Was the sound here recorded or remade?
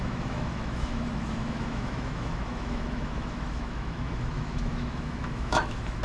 remade